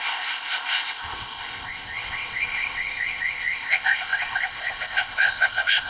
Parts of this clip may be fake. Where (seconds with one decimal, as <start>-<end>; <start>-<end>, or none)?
0.0-5.9